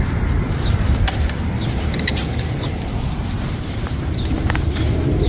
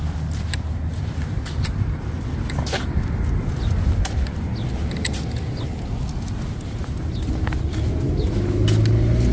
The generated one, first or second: first